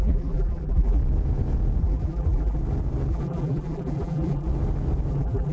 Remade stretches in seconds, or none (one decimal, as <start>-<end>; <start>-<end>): 0.0-1.0; 1.8-2.6; 3.1-4.5; 5.1-5.5